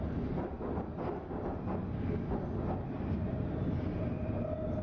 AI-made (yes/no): no